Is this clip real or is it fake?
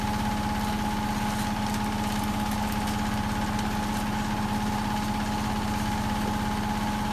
real